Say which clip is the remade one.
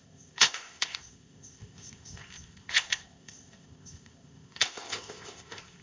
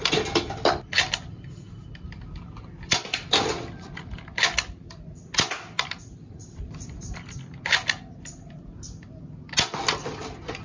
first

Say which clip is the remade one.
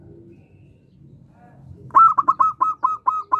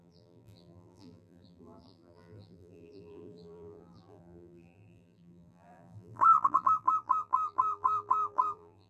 second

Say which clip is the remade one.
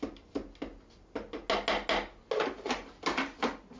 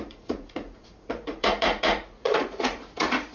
second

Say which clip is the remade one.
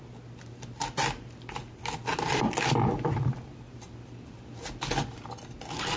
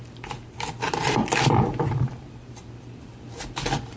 second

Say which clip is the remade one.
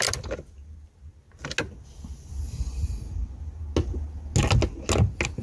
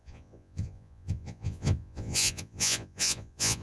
second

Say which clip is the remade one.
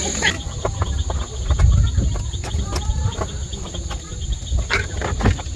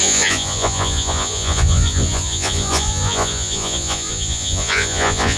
second